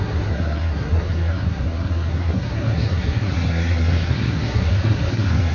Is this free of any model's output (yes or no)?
no